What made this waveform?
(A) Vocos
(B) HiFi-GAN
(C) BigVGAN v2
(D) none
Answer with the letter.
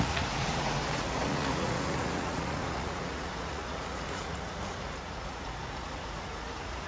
A